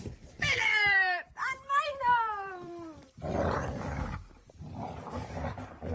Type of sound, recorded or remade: remade